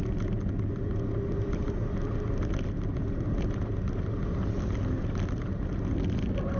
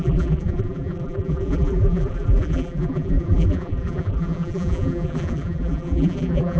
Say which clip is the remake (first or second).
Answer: second